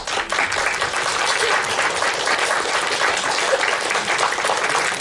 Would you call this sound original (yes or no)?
yes